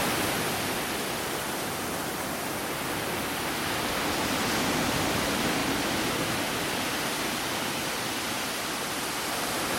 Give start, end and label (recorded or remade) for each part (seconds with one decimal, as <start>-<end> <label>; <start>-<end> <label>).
0.0-9.8 recorded